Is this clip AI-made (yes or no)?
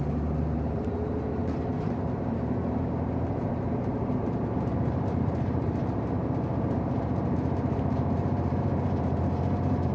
yes